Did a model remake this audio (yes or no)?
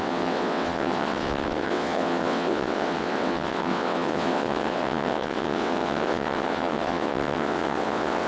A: yes